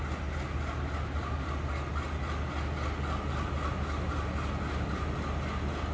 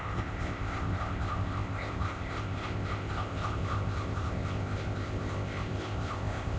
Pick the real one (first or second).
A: first